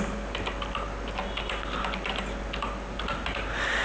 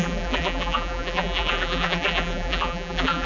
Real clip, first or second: first